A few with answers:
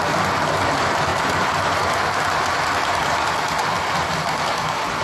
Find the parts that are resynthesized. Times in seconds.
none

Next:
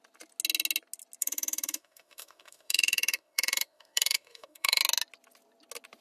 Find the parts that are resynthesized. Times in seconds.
1.2-4.8 (autoencoder, DAC-VAE)

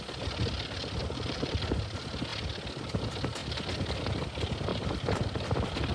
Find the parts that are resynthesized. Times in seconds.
1.0-1.6 (vocoder, BigVGAN v2); 4.7-5.5

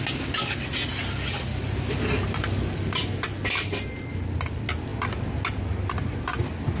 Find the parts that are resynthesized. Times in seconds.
none

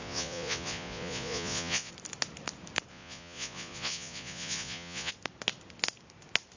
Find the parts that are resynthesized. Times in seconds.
0.0-1.9 (vocoder, Vocos); 2.9-5.1

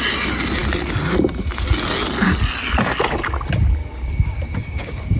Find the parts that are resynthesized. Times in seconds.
3.8-5.2 (codec, DAC)

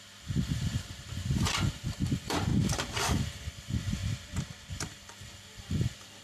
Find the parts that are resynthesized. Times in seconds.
0.0-2.5 (vocoder, BigVGAN v2); 3.0-4.0; 4.7-6.2

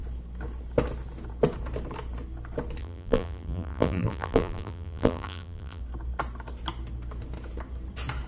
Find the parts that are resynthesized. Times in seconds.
2.8-5.8 (vocoder, BigVGAN v2)